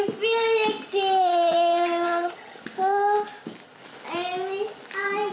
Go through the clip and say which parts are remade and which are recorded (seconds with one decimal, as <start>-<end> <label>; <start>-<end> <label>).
0.0-1.3 recorded; 1.3-2.6 remade; 2.6-5.3 recorded